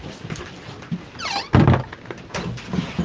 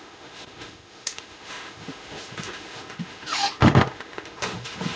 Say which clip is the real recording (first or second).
first